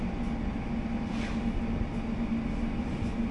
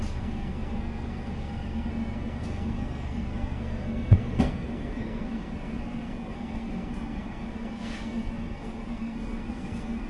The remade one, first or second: second